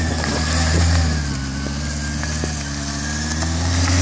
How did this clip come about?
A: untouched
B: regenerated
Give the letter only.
A